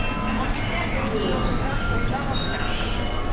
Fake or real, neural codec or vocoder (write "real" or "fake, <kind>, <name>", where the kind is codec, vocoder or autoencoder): real